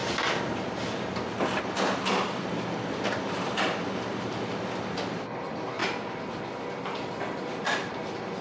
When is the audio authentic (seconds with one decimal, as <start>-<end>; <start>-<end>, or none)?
1.3-5.8; 7.9-8.4